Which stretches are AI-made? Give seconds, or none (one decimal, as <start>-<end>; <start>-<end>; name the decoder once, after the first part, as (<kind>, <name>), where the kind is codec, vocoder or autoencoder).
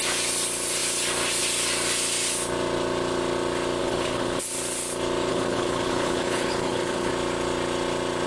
3.8-4.4 (codec, HILCodec); 5.3-7.1